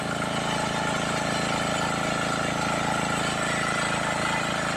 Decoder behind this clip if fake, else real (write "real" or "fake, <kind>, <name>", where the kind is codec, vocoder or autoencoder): real